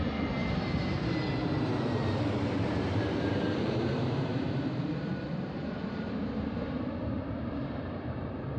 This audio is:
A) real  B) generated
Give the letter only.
B